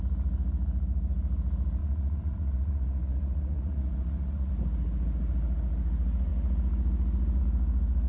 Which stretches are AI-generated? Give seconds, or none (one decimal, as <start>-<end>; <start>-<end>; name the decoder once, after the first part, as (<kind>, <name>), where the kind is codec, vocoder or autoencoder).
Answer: 1.8-4.5 (vocoder, Vocos)